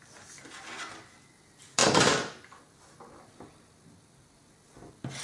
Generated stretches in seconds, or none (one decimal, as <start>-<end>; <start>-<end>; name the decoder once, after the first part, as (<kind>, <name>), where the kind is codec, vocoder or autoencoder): none